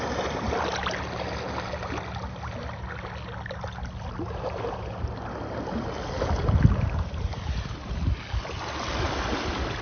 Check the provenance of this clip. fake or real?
real